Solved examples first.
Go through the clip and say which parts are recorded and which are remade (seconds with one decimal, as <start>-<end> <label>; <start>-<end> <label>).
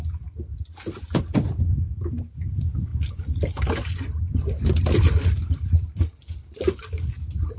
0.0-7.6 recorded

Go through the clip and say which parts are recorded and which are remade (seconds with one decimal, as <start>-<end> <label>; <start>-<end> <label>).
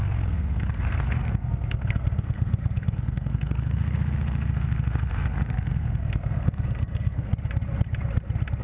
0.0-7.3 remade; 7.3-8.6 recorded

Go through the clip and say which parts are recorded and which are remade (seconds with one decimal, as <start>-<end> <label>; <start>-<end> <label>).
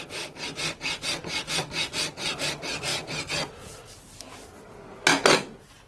0.0-5.9 recorded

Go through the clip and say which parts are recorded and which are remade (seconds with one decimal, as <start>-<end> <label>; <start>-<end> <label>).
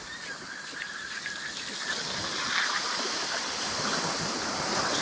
0.0-5.0 recorded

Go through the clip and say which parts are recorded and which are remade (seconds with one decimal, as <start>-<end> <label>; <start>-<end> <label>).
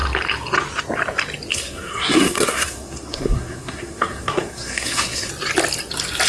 0.0-1.5 recorded; 1.5-5.3 remade; 5.3-6.3 recorded